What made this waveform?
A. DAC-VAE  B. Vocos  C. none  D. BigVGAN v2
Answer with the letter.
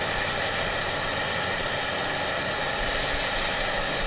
C